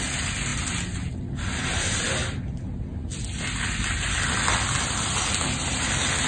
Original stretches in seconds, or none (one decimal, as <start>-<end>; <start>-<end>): 0.0-6.3